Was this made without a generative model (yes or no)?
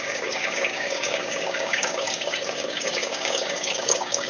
no